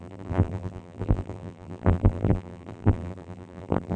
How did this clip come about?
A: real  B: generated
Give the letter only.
B